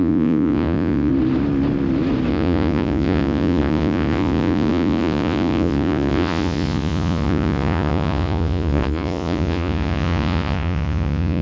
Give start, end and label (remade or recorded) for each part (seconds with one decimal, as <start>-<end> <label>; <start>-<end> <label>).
0.0-1.1 remade; 1.1-2.3 recorded; 2.3-11.4 remade